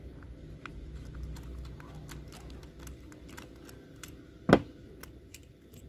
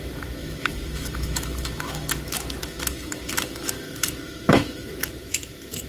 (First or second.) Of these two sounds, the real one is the first